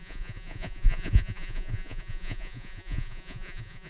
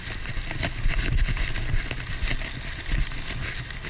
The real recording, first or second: second